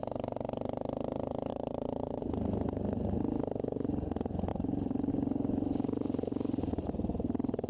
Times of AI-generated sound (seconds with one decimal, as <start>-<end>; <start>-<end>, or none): 1.5-2.2; 4.5-5.1